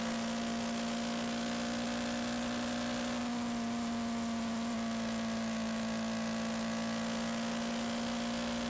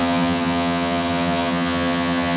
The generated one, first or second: second